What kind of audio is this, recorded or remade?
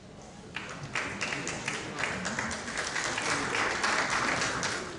recorded